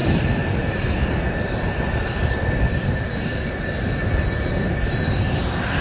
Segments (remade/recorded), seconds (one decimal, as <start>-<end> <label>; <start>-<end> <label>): 0.0-5.8 remade